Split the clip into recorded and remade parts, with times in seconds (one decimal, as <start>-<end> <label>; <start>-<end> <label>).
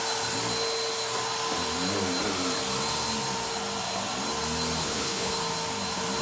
0.0-4.8 recorded; 4.8-5.3 remade; 5.3-6.2 recorded